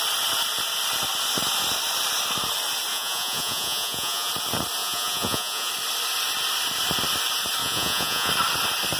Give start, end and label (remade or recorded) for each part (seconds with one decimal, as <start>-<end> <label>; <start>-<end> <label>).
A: 0.0-2.9 recorded; 2.9-4.3 remade; 4.3-4.8 recorded; 4.8-5.7 remade; 5.7-7.6 recorded; 7.6-8.3 remade; 8.3-9.0 recorded